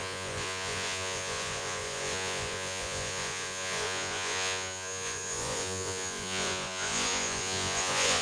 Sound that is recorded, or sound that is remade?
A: remade